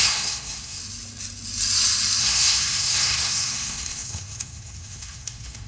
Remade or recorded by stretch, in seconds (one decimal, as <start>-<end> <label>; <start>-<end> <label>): 0.0-0.8 remade; 0.8-2.2 recorded; 2.2-5.7 remade